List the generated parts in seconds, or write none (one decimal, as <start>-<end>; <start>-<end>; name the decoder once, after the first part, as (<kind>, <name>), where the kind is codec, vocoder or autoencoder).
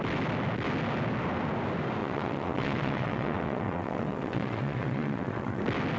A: 2.0-5.6 (vocoder, WaveNeXt)